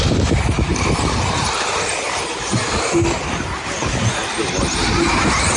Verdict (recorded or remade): recorded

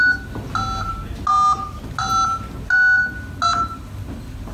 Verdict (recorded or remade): recorded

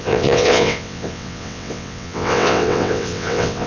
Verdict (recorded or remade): remade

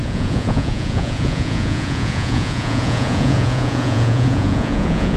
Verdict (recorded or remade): remade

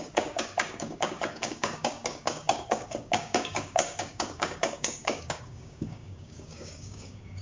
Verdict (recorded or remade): remade